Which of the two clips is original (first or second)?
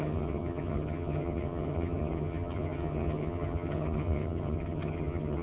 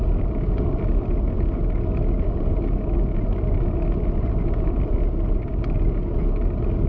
second